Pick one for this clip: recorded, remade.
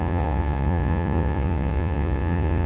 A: remade